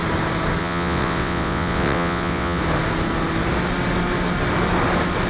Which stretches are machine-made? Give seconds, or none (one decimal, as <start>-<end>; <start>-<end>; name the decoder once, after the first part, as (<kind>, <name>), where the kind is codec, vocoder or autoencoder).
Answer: 0.6-2.6 (vocoder, WaveNeXt)